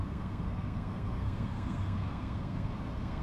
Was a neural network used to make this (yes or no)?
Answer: yes